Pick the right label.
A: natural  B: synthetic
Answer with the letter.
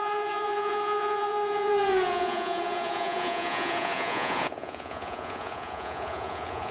B